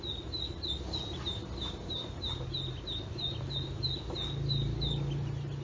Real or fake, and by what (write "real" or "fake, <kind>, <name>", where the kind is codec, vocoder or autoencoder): real